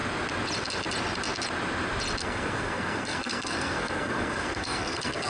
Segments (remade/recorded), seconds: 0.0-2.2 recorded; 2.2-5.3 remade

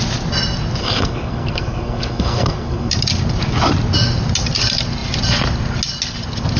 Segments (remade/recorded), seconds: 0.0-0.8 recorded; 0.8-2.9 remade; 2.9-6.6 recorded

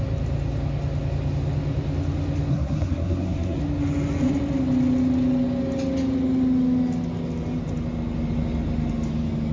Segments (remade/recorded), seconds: 0.0-2.5 recorded; 2.5-3.6 remade; 3.6-9.5 recorded

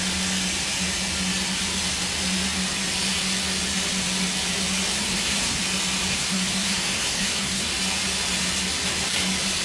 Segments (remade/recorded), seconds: 0.0-4.9 recorded; 4.9-5.6 remade; 5.6-6.1 recorded; 6.1-7.7 remade; 7.7-9.6 recorded